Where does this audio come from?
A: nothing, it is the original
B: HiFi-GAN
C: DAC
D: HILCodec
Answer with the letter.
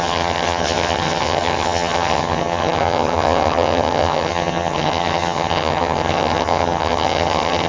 B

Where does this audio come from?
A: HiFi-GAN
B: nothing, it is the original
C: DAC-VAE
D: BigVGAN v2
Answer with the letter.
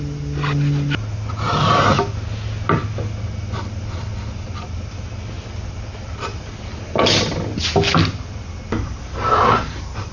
B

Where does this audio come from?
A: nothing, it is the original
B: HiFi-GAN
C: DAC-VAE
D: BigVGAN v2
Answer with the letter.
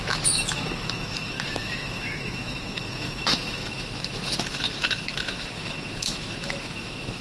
C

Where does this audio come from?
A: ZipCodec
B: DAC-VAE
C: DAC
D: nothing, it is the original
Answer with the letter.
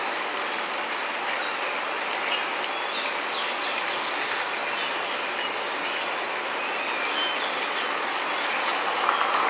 D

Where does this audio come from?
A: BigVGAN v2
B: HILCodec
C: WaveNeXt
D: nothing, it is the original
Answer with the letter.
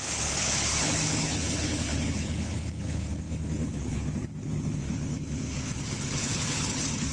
B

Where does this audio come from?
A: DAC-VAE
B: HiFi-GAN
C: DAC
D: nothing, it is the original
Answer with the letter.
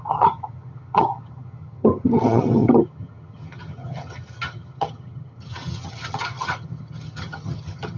B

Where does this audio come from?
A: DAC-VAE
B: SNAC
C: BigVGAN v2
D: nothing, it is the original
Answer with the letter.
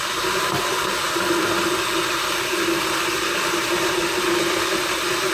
D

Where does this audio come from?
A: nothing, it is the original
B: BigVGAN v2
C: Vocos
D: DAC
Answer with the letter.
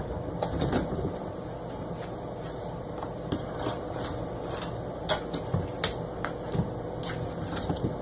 A